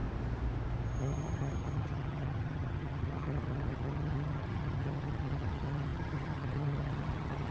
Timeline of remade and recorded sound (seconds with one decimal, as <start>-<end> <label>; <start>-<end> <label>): 0.0-1.0 recorded; 1.0-7.5 remade